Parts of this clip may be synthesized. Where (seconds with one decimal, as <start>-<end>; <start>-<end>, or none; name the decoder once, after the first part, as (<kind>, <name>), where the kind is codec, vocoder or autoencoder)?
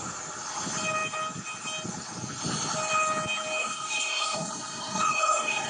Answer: 3.6-5.7 (codec, SNAC)